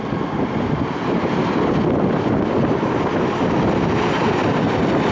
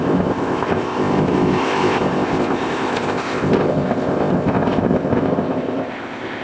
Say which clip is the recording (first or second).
first